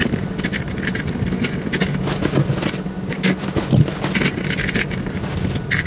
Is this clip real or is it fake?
real